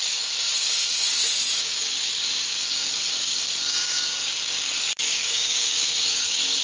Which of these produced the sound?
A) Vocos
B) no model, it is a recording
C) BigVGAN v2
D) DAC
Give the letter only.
D